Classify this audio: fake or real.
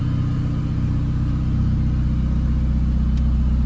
real